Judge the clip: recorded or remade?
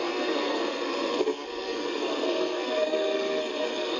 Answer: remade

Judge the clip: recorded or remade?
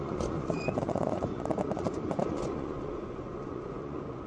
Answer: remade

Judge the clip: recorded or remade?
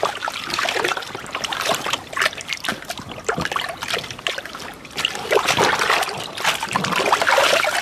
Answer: remade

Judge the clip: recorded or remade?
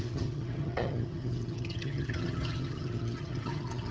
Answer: remade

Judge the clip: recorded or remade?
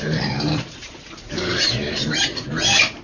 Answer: remade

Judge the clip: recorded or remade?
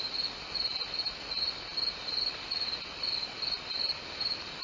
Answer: recorded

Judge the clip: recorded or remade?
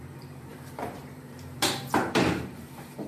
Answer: remade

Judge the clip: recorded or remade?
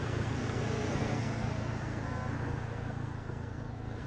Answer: remade